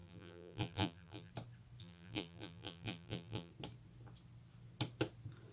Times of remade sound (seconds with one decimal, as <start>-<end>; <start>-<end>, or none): 0.0-1.3; 1.8-3.5